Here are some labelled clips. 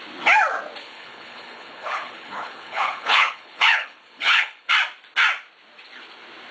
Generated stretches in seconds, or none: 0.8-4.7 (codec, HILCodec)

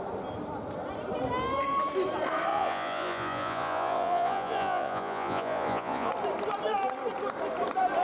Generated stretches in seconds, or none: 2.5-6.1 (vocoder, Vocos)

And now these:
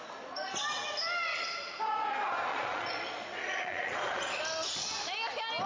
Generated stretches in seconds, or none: 2.5-4.4 (vocoder, Vocos)

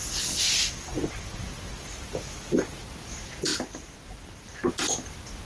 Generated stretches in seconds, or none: none

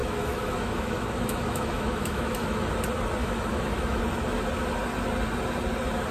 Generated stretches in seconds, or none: 0.0-2.7 (autoencoder, DAC-VAE); 3.2-4.0

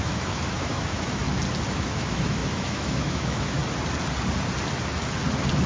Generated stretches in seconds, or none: 0.0-1.2 (autoencoder, DAC-VAE); 1.7-3.6